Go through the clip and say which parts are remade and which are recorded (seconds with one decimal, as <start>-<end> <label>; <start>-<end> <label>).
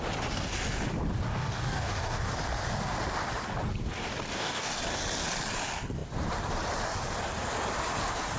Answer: 0.0-1.3 recorded; 1.3-2.3 remade; 2.3-4.3 recorded; 4.3-4.8 remade; 4.8-8.4 recorded